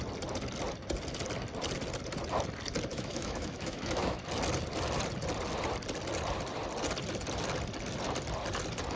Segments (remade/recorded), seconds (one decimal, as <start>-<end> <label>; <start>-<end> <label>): 0.0-2.9 recorded; 2.9-4.2 remade; 4.2-9.0 recorded